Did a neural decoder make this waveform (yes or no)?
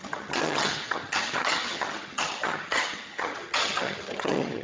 yes